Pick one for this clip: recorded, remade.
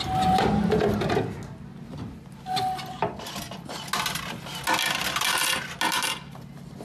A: recorded